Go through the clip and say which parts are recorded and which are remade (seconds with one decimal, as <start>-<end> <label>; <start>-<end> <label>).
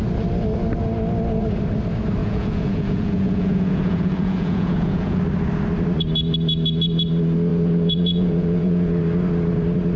0.0-2.2 recorded; 2.2-5.2 remade; 5.2-7.5 recorded; 7.5-9.0 remade; 9.0-10.0 recorded